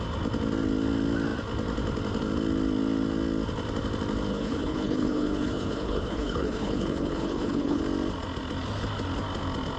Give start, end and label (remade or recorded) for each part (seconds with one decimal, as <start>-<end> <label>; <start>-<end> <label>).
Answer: 0.0-4.3 recorded; 4.3-7.8 remade; 7.8-9.8 recorded